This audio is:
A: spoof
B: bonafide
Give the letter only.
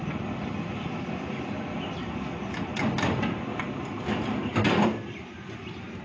B